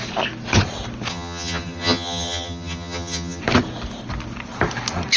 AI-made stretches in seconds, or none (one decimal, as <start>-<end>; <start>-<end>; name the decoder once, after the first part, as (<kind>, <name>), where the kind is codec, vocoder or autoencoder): 1.1-3.4 (vocoder, HiFi-GAN)